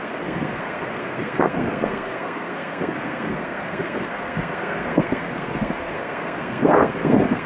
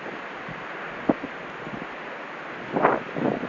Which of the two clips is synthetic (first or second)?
first